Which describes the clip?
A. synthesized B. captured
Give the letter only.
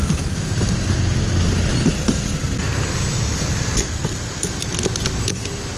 B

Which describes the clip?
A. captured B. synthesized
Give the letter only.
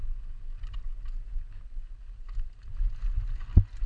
A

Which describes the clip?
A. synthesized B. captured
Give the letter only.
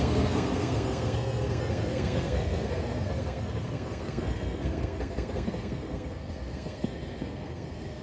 A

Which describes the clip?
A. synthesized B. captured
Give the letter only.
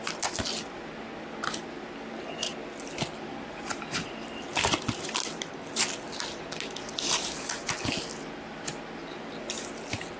B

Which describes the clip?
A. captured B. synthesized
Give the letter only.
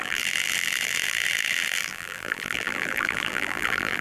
B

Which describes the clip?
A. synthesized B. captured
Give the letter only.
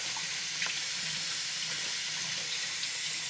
B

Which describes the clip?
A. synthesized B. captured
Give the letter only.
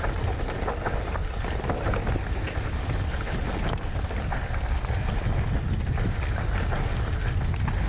B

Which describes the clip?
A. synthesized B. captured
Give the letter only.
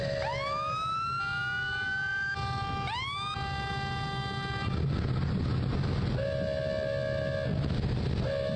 B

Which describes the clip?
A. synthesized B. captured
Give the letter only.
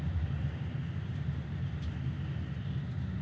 B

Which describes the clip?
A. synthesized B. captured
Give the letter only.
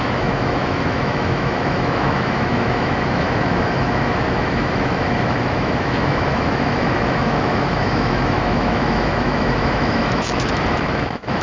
A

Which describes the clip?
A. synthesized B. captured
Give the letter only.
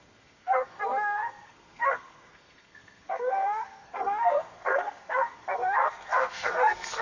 A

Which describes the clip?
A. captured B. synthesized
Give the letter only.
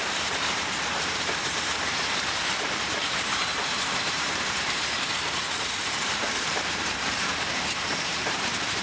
B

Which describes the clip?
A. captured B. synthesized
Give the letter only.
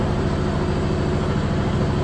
A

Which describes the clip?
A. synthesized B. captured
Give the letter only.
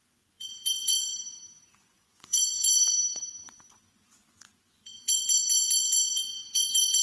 A